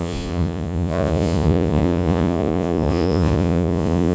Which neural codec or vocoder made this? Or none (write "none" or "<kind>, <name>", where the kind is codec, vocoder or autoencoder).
vocoder, Vocos